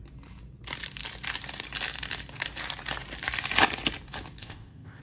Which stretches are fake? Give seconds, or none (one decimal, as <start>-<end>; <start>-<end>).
4.4-5.0